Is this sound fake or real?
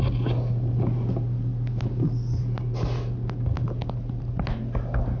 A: real